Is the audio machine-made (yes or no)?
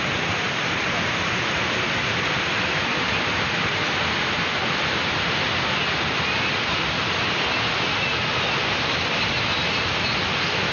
no